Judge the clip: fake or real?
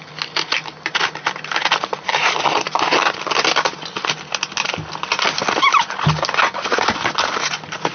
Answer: real